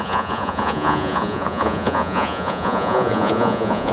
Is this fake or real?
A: fake